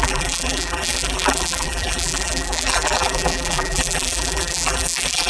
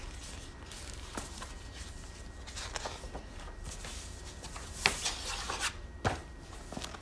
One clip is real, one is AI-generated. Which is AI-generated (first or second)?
first